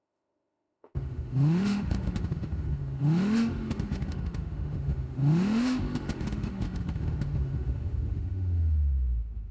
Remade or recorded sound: remade